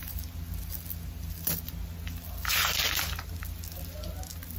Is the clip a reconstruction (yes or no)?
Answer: no